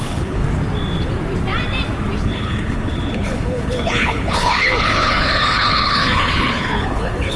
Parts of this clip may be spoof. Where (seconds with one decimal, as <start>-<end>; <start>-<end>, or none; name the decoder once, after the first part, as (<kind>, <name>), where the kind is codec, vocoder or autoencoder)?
0.0-0.4 (codec, HILCodec); 2.2-7.4